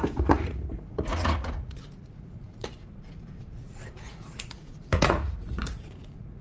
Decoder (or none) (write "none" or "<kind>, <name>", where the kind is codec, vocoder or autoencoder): vocoder, Vocos